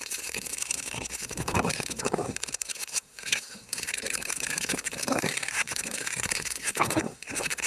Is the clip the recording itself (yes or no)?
no